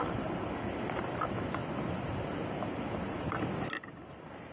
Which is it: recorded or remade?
recorded